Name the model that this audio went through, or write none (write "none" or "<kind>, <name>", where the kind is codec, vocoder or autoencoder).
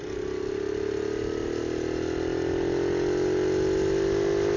none